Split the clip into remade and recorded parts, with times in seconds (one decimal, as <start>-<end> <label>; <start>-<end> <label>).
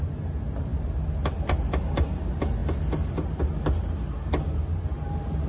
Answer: 0.0-5.5 recorded